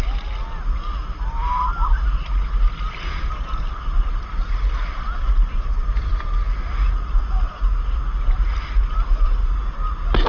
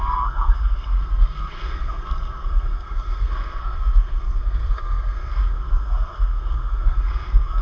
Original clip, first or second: first